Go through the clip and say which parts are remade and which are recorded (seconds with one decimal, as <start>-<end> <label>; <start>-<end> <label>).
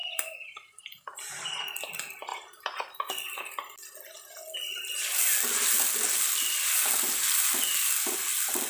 0.0-0.8 remade; 0.8-2.3 recorded; 2.3-3.1 remade; 3.1-8.7 recorded